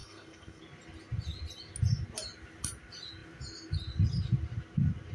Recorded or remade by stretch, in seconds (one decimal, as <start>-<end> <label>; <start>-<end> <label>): 0.0-0.6 remade; 0.6-5.1 recorded